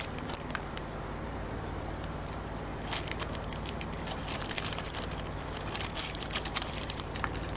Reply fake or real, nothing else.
fake